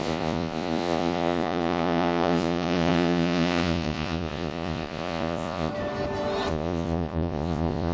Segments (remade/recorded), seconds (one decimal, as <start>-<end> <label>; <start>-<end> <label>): 0.0-5.7 remade; 5.7-6.5 recorded; 6.5-7.9 remade